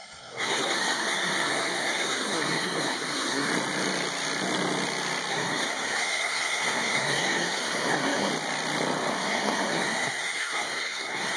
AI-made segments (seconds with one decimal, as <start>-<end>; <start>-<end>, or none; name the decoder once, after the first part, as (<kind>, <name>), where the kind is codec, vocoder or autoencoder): 0.0-3.5 (codec, SNAC); 5.3-8.3; 9.1-11.4